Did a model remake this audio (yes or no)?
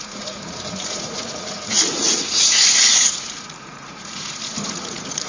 yes